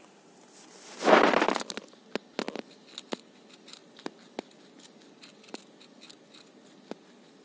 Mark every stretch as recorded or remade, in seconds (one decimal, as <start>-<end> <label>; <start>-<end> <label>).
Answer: 0.0-7.4 recorded